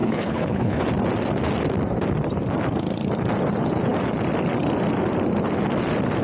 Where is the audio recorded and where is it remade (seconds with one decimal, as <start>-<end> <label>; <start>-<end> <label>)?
0.0-0.8 remade; 0.8-6.2 recorded